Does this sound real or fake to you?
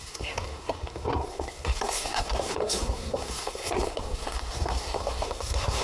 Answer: fake